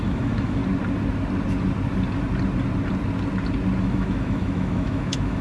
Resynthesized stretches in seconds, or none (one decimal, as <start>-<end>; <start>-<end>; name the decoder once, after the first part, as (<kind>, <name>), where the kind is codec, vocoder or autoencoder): 0.0-0.6 (autoencoder, DAC-VAE); 3.8-5.4